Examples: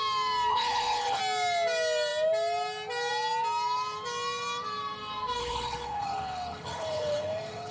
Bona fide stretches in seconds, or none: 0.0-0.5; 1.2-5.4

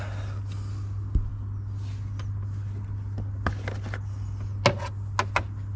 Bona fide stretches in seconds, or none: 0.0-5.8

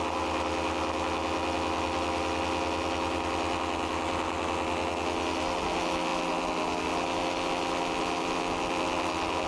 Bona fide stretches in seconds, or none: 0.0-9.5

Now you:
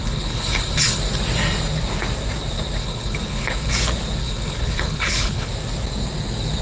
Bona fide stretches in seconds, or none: 1.0-2.8; 3.7-4.2; 5.5-6.6

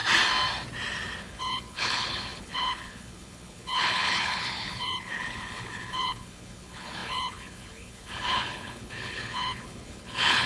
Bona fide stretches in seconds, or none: 0.0-1.2